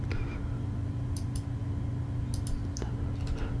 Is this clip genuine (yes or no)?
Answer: yes